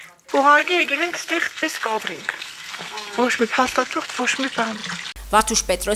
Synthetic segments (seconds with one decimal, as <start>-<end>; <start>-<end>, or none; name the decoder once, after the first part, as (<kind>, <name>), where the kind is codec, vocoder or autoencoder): 0.6-4.2 (codec, SNAC)